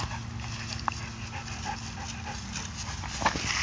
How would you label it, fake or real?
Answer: real